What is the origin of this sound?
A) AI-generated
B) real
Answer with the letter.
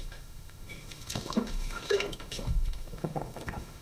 A